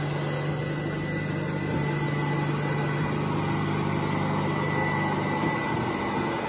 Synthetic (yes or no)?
no